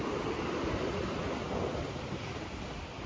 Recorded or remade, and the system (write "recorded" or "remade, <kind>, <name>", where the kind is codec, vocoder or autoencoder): recorded